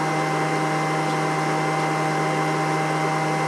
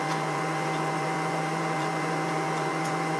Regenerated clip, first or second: second